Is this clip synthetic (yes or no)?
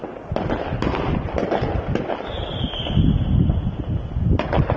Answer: no